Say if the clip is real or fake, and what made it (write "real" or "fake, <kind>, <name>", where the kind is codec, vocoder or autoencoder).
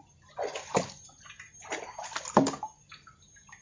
real